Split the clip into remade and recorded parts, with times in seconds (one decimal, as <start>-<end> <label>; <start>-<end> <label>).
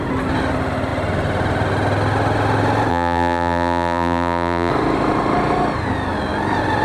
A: 0.0-2.9 recorded; 2.9-4.7 remade; 4.7-6.8 recorded